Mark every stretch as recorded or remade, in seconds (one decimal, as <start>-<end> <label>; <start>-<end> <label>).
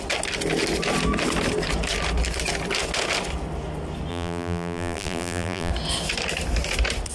0.0-4.1 recorded; 4.1-5.7 remade; 5.7-7.1 recorded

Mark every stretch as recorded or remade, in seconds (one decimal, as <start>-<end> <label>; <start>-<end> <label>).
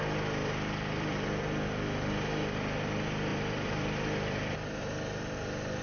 0.0-0.4 recorded; 0.4-1.4 remade; 1.4-3.3 recorded; 3.3-4.8 remade; 4.8-5.8 recorded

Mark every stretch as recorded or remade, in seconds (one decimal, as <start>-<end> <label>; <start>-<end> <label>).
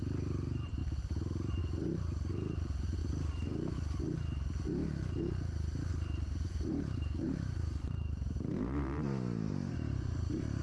0.0-0.8 remade; 0.8-1.6 recorded; 1.6-3.0 remade; 3.0-5.9 recorded; 5.9-10.6 remade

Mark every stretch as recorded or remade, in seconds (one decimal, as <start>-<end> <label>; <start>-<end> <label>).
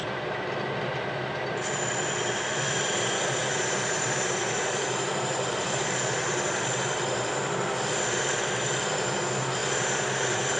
0.0-3.4 recorded; 3.4-6.2 remade; 6.2-9.6 recorded; 9.6-10.6 remade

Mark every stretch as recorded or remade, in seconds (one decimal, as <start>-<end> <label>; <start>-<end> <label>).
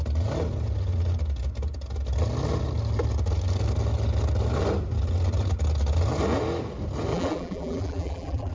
0.0-7.1 recorded; 7.1-8.5 remade